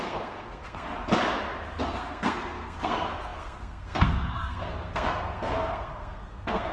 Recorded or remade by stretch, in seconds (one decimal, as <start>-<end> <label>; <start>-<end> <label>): 0.0-0.9 remade; 0.9-1.8 recorded; 1.8-6.7 remade